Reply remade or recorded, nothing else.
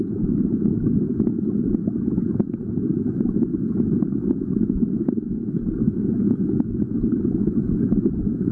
remade